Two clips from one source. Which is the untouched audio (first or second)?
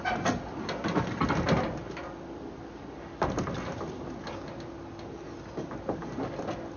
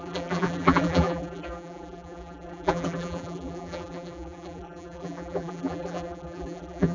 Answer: first